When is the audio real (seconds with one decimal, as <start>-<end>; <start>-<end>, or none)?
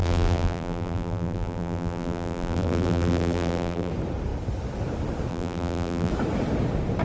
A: 3.9-5.3; 6.1-7.0